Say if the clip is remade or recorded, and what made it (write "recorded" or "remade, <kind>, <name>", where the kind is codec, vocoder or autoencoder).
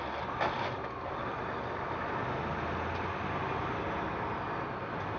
recorded